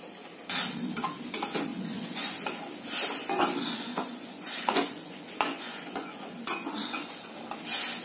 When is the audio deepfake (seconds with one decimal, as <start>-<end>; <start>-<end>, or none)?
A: 1.7-2.7; 3.2-7.3